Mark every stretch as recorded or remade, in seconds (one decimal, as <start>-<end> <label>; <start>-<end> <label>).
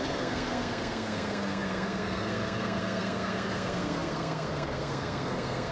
0.0-5.7 remade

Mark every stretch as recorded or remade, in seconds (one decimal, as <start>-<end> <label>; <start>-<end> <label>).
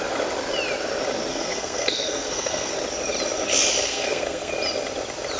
0.0-1.3 recorded; 1.3-2.7 remade; 2.7-3.9 recorded; 3.9-4.5 remade; 4.5-5.4 recorded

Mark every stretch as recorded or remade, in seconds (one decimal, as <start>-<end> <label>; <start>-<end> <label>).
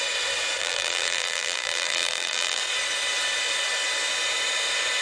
0.0-0.6 recorded; 0.6-2.6 remade; 2.6-5.0 recorded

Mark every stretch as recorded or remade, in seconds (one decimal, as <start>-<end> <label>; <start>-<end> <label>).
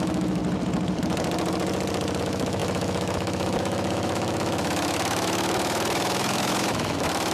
0.0-0.4 remade; 0.4-2.2 recorded; 2.2-7.3 remade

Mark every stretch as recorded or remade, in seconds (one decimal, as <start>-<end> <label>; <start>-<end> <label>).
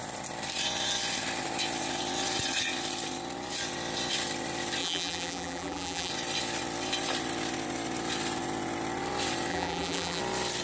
0.0-4.8 recorded; 4.8-6.1 remade; 6.1-9.5 recorded; 9.5-10.2 remade; 10.2-10.6 recorded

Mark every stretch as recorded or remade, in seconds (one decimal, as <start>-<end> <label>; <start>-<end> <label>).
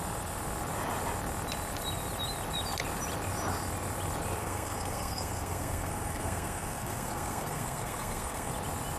0.0-4.4 recorded; 4.4-8.5 remade; 8.5-9.0 recorded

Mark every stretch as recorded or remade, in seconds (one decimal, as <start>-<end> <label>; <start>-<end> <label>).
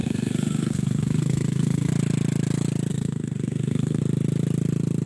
0.0-1.9 remade; 1.9-2.9 recorded; 2.9-4.0 remade; 4.0-5.1 recorded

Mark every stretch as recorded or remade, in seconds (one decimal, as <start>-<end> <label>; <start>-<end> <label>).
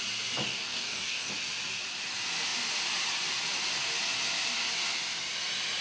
0.0-0.4 recorded; 0.4-1.3 remade; 1.3-5.8 recorded